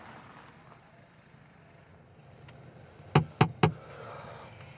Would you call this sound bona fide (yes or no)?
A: yes